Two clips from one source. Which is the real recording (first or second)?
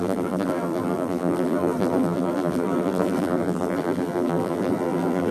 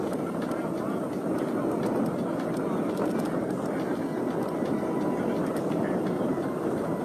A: second